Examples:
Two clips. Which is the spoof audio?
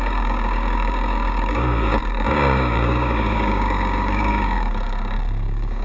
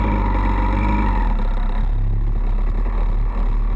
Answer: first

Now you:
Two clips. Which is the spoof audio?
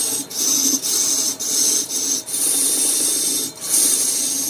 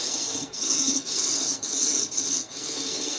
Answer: second